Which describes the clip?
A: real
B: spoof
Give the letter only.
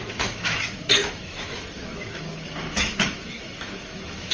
B